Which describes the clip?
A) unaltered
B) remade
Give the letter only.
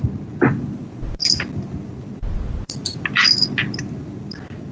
A